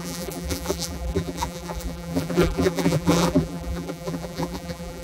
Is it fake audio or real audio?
fake